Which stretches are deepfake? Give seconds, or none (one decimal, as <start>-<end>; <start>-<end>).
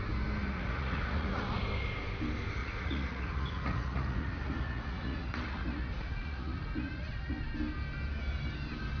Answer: 0.4-1.6; 2.6-7.4